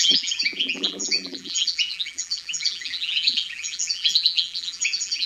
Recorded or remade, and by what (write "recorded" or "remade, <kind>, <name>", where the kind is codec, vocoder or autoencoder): remade, vocoder, BigVGAN v2